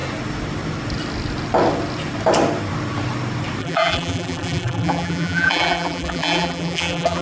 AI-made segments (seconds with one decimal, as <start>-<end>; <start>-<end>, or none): 3.6-7.2